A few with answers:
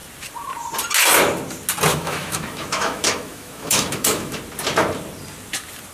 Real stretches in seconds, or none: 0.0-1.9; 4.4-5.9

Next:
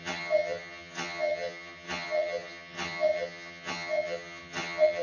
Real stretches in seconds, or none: none

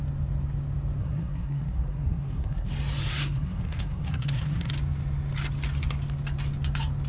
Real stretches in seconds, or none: 0.0-1.0; 2.7-3.1; 4.7-7.1